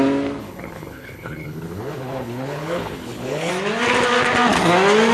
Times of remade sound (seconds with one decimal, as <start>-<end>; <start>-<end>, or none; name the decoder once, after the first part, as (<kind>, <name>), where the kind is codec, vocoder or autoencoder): 0.4-3.5 (codec, HILCodec)